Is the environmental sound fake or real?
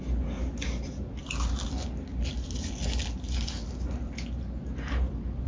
real